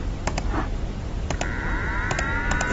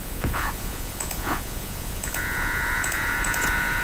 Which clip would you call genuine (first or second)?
first